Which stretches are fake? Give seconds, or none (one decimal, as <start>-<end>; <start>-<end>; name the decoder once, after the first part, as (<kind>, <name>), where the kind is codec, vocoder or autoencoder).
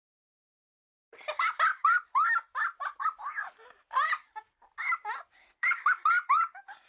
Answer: 0.0-6.9 (vocoder, BigVGAN v2)